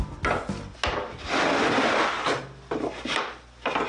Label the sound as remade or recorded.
recorded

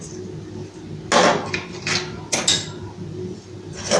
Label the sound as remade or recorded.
recorded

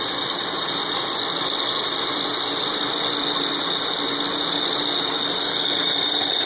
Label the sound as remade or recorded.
recorded